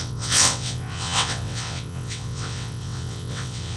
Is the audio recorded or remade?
remade